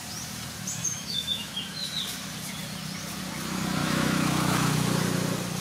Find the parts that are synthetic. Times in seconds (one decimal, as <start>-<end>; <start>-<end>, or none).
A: 0.8-1.9; 3.8-4.8